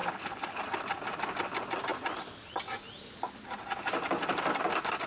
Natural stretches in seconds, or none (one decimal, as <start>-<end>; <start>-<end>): 0.6-5.1